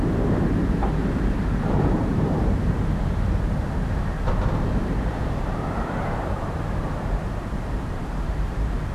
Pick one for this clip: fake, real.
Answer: fake